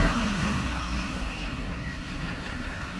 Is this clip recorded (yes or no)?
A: no